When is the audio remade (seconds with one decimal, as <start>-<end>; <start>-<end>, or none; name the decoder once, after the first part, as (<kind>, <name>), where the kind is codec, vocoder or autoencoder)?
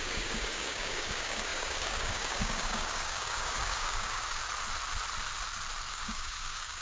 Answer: 0.0-4.4 (codec, DAC); 5.9-6.8